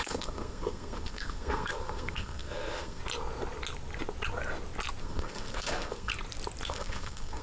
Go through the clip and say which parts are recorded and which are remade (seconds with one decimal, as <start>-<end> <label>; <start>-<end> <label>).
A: 0.0-3.0 remade; 3.0-5.0 recorded; 5.0-6.1 remade; 6.1-6.7 recorded; 6.7-7.4 remade

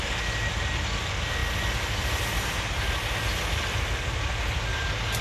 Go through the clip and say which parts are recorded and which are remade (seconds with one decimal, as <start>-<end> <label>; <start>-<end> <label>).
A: 0.0-5.2 recorded

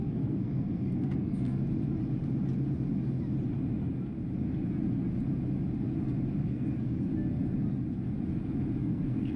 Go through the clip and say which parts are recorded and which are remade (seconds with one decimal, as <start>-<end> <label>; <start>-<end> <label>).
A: 0.0-1.5 remade; 1.5-6.4 recorded; 6.4-7.1 remade; 7.1-8.8 recorded; 8.8-9.4 remade

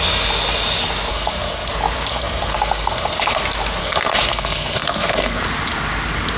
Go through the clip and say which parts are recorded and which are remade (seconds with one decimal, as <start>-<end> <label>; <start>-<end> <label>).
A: 0.0-1.1 recorded; 1.1-1.7 remade; 1.7-2.1 recorded; 2.1-3.4 remade; 3.4-3.8 recorded; 3.8-5.4 remade; 5.4-6.4 recorded

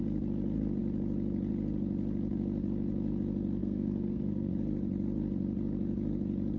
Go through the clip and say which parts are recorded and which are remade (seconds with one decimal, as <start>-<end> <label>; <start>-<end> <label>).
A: 0.0-3.6 recorded; 3.6-4.5 remade; 4.5-6.6 recorded

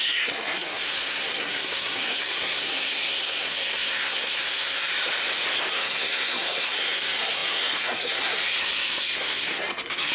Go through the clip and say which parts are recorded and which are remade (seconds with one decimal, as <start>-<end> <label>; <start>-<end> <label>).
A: 0.0-4.9 remade; 4.9-5.7 recorded; 5.7-10.1 remade

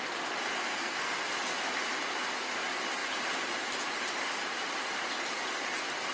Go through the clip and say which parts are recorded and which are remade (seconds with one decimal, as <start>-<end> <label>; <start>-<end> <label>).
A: 0.0-0.7 recorded; 0.7-1.3 remade; 1.3-6.1 recorded